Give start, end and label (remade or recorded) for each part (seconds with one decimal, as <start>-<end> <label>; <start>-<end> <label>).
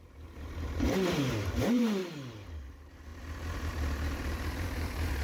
0.0-2.0 remade; 2.0-2.7 recorded; 2.7-3.1 remade; 3.1-3.7 recorded; 3.7-5.2 remade